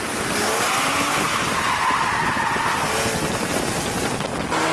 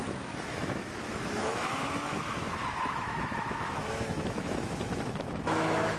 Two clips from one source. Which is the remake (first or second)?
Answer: second